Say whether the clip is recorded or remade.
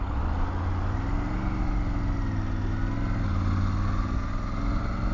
recorded